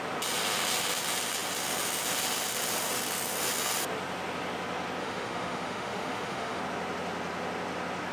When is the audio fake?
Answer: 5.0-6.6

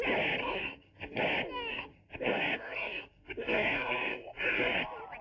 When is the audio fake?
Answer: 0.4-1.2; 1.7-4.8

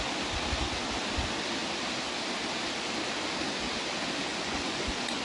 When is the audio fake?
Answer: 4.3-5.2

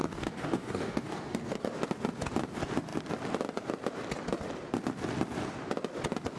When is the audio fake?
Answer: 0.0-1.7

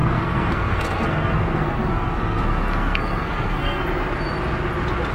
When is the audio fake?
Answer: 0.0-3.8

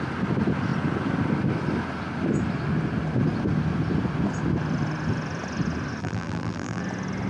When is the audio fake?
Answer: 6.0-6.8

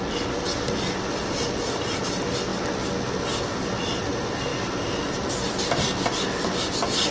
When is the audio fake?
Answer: 0.0-2.5; 3.4-4.5